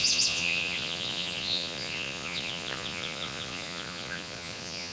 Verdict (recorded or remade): remade